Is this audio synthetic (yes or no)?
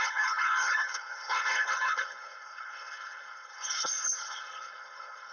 yes